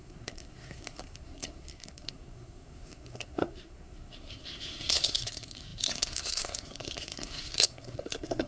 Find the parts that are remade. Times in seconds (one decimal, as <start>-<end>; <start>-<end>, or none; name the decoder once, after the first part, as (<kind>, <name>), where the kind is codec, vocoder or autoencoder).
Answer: 0.0-8.5 (codec, SNAC)